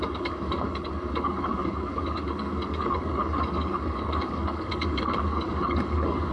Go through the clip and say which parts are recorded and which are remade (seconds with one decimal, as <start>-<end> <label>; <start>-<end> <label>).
0.0-6.3 remade